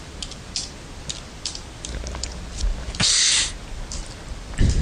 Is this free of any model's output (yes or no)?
yes